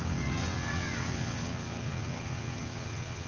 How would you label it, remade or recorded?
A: remade